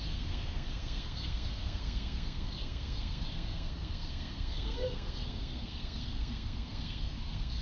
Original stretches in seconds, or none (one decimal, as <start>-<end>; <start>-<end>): none